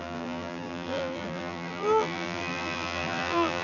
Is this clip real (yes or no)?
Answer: no